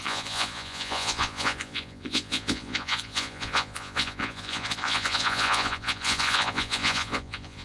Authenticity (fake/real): fake